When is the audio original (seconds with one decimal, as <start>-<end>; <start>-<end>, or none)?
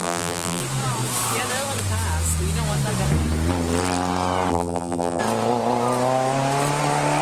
0.6-4.5; 5.2-7.2